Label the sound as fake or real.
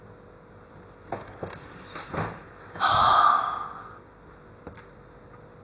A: real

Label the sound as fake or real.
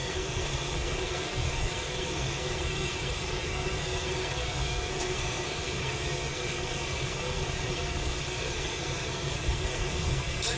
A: fake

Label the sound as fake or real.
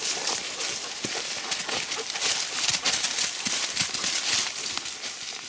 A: real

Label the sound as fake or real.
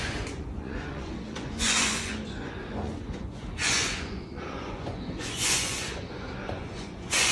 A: fake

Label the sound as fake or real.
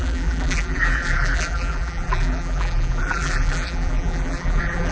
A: fake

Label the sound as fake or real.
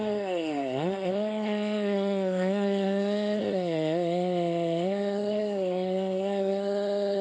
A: fake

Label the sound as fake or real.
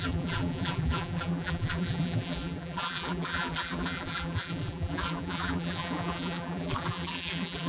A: fake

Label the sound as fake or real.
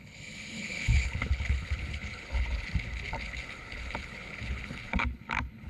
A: fake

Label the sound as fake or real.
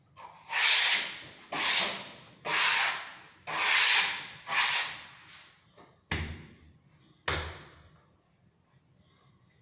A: real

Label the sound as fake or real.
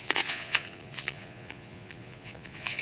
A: fake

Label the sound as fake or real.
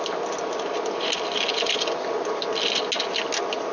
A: real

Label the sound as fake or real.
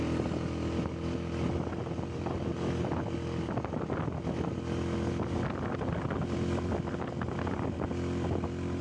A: real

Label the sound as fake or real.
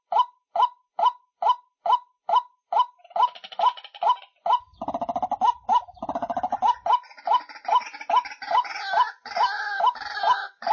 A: real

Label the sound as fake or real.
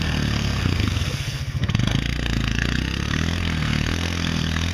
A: fake